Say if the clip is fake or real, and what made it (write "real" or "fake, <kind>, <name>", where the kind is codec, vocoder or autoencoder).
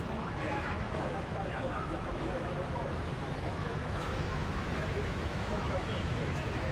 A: fake, autoencoder, DAC-VAE